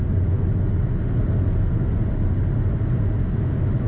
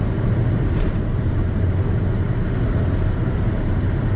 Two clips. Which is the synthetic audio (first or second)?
second